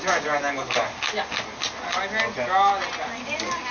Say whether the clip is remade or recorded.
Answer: recorded